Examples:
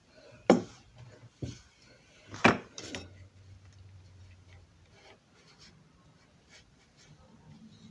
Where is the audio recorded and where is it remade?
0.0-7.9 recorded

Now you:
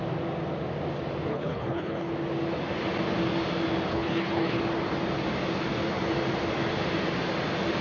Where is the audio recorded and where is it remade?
0.0-1.3 recorded; 1.3-2.1 remade; 2.1-3.9 recorded; 3.9-4.6 remade; 4.6-7.8 recorded

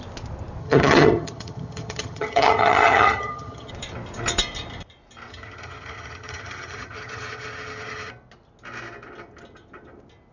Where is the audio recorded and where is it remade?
0.0-0.6 recorded; 0.6-3.7 remade; 3.7-5.3 recorded; 5.3-8.1 remade; 8.1-10.3 recorded

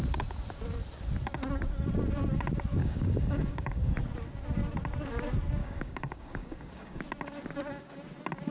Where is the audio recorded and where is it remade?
0.0-2.8 recorded; 2.8-3.9 remade; 3.9-5.6 recorded; 5.6-7.0 remade; 7.0-8.5 recorded

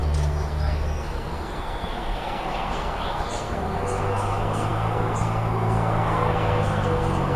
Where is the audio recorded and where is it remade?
0.0-7.4 remade

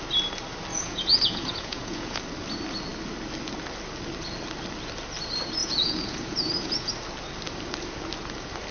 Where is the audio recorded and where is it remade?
0.0-0.7 recorded; 0.7-2.2 remade; 2.2-5.6 recorded; 5.6-6.9 remade; 6.9-8.7 recorded

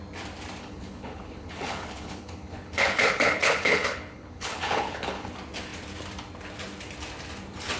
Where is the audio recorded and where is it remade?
0.0-0.6 recorded; 0.6-5.3 remade; 5.3-7.8 recorded

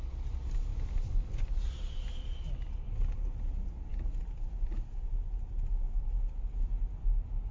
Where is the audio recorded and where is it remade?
0.0-0.7 recorded; 0.7-1.9 remade; 1.9-7.5 recorded